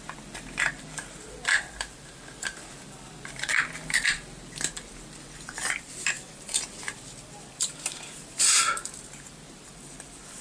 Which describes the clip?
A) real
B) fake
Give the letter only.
B